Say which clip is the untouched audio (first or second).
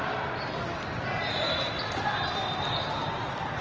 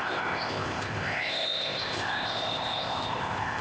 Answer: first